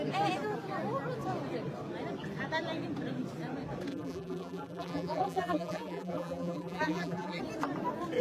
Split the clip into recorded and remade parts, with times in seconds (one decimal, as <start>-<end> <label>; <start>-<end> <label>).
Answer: 0.0-3.9 recorded; 3.9-7.4 remade; 7.4-8.2 recorded